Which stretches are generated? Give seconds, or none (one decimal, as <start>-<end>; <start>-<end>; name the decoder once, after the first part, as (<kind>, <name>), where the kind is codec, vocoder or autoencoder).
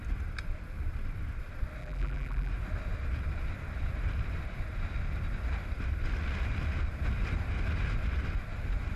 1.8-2.5 (vocoder, BigVGAN v2)